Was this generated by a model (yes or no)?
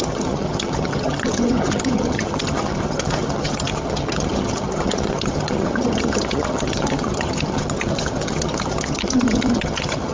yes